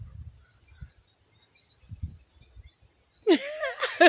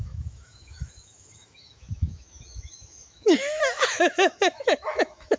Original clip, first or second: first